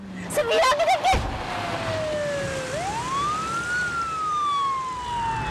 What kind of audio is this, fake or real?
real